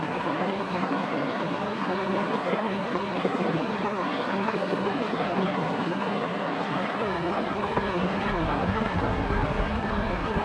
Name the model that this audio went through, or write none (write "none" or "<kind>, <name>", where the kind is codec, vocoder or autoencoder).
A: codec, SNAC